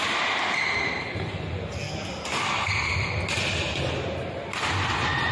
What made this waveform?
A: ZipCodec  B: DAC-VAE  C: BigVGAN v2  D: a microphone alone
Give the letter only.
D